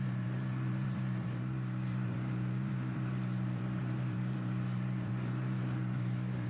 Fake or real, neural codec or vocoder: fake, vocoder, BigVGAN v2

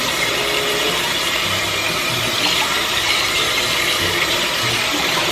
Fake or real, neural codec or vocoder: fake, vocoder, BigVGAN v2